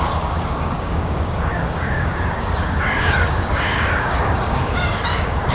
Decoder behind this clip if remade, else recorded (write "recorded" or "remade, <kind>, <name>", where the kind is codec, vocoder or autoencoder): remade, codec, DAC